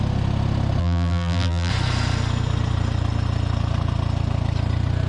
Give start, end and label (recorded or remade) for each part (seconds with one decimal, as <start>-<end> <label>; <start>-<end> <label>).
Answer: 0.0-0.8 recorded; 0.8-1.7 remade; 1.7-5.1 recorded